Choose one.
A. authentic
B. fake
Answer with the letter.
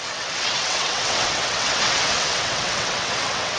B